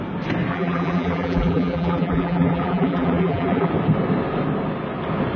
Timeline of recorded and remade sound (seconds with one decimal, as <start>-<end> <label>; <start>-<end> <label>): 0.0-0.5 recorded; 0.5-3.7 remade; 3.7-5.4 recorded